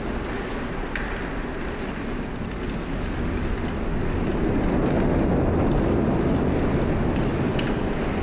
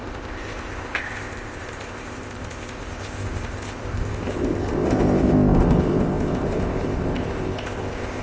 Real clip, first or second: first